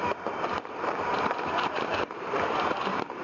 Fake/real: fake